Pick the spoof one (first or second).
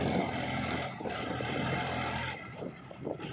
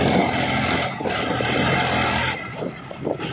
first